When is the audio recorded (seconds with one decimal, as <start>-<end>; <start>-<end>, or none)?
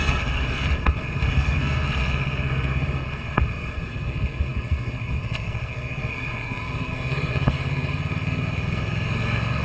none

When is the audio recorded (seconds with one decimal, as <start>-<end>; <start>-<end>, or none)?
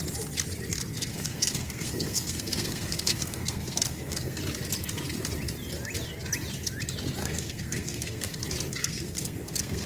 0.0-0.9; 4.4-7.2; 8.4-8.8